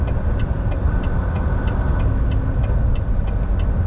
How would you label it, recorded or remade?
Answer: recorded